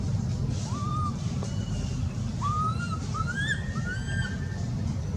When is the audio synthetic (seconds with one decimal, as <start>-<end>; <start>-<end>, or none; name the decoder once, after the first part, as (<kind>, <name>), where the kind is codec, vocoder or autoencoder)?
0.9-3.2 (vocoder, BigVGAN v2)